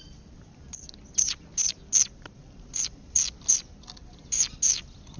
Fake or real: real